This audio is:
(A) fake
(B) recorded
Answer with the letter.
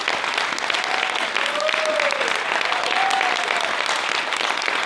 B